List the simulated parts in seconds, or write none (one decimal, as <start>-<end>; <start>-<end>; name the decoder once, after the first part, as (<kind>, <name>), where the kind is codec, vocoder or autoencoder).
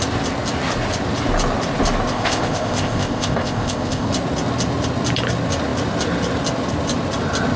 2.1-4.1 (codec, ZipCodec)